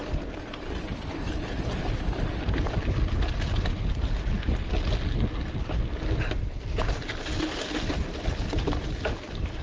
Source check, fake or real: real